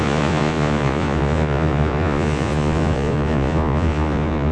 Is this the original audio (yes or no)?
no